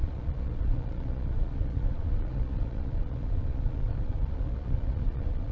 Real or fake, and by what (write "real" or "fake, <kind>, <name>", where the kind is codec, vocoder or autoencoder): fake, vocoder, Vocos